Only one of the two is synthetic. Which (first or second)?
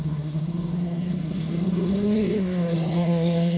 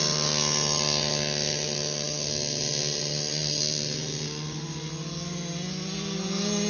first